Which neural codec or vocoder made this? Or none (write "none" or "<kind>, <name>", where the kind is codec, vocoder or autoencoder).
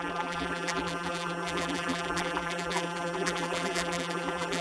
vocoder, BigVGAN v2